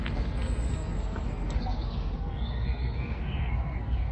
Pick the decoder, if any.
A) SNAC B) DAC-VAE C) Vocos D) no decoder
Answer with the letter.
A